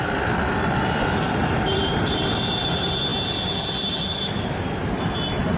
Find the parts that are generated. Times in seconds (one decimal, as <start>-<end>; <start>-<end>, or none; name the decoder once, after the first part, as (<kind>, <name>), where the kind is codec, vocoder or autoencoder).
1.4-2.1 (vocoder, BigVGAN v2)